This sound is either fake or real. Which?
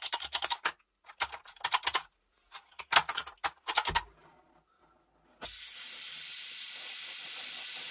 real